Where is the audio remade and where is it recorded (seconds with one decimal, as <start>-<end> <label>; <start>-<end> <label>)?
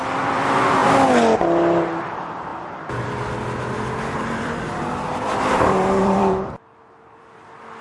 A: 0.0-0.8 remade; 0.8-2.0 recorded; 2.0-2.5 remade; 2.5-3.7 recorded; 3.7-7.8 remade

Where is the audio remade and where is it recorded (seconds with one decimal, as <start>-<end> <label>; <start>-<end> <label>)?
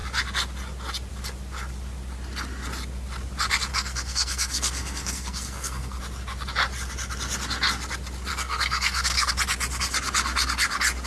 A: 0.0-3.7 recorded; 3.7-6.0 remade; 6.0-8.3 recorded; 8.3-9.3 remade; 9.3-11.1 recorded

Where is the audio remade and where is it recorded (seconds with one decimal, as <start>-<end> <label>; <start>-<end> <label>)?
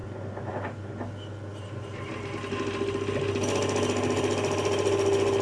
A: 0.0-5.4 recorded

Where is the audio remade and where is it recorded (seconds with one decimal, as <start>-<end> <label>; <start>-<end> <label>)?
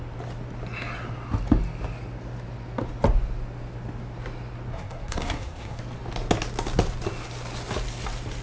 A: 0.0-4.7 recorded; 4.7-5.8 remade; 5.8-8.4 recorded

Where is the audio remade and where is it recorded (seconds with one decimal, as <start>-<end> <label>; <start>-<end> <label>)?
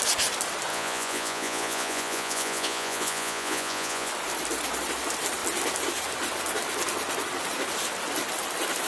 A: 0.0-0.7 recorded; 0.7-4.1 remade; 4.1-8.9 recorded